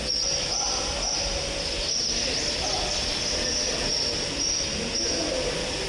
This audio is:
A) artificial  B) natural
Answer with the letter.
B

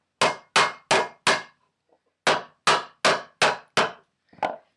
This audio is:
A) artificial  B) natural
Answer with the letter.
B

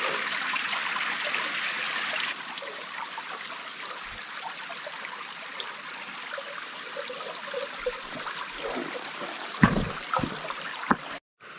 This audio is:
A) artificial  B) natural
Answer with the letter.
B